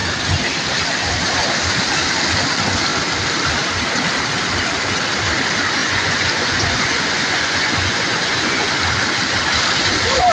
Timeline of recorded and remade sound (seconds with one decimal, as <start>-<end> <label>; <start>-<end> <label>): 0.0-5.8 recorded; 5.8-8.7 remade; 8.7-10.3 recorded